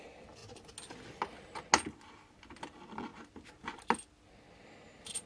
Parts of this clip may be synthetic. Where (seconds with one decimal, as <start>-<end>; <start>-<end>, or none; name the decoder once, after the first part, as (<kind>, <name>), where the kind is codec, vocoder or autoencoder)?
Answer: none